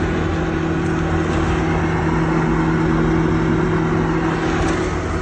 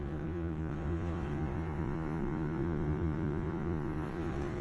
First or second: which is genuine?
first